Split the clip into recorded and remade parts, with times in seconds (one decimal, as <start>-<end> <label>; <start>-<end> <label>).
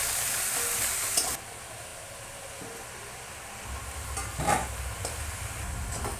0.0-6.2 recorded